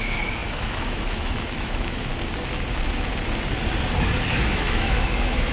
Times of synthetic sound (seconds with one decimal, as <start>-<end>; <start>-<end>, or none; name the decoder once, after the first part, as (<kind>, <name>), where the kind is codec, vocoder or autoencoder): 0.0-2.1 (autoencoder, DAC-VAE); 4.5-5.5